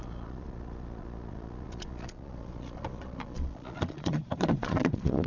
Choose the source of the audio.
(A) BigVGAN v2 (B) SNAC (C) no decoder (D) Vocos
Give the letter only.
D